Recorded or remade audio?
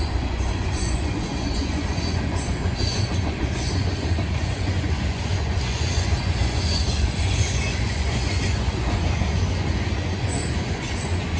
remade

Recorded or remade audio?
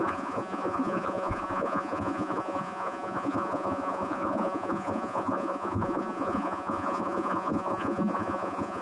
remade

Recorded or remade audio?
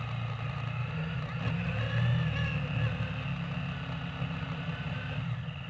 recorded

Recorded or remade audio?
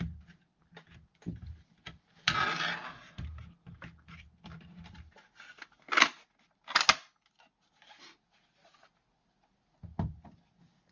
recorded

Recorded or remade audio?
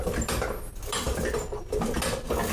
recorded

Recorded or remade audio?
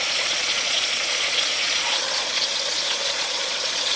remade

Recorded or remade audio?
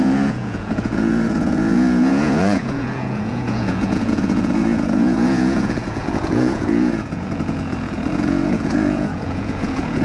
remade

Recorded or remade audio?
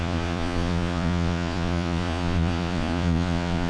remade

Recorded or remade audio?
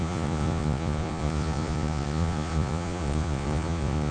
remade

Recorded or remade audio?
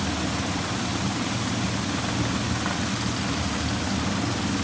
recorded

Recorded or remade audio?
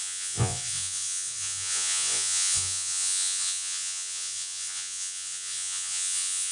remade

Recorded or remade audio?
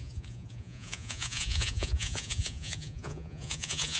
remade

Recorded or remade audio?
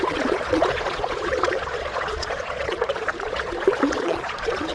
remade